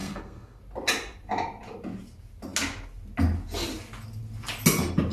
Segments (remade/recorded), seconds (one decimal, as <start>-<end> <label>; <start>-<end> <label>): 0.0-0.6 remade; 0.6-5.1 recorded